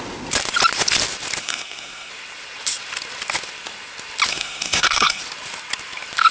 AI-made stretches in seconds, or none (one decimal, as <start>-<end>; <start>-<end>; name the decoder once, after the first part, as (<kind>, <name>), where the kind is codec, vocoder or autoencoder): 1.4-2.1 (codec, SNAC); 4.3-5.2